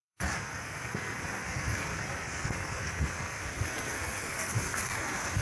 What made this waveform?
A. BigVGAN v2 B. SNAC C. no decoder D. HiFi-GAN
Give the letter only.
B